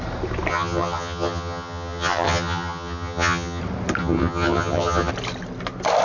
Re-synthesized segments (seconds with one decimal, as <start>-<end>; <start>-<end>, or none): 0.5-3.6; 4.0-5.1